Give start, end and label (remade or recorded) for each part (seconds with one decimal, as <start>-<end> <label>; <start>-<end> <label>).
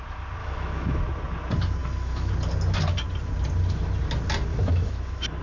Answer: 0.0-0.4 recorded; 0.4-1.0 remade; 1.0-1.8 recorded; 1.8-2.3 remade; 2.3-4.5 recorded; 4.5-5.4 remade